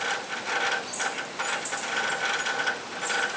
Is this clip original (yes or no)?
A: yes